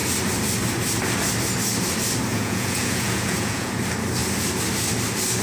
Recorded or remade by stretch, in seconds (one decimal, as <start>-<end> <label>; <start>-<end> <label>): 0.0-2.3 recorded; 2.3-3.8 remade; 3.8-5.4 recorded